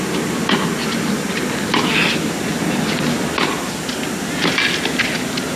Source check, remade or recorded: recorded